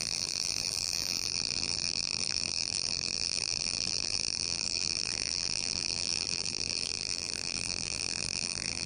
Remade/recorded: remade